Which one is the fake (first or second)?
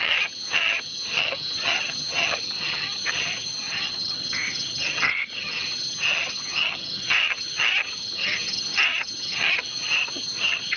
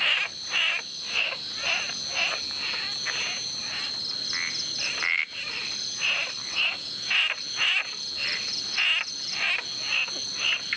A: first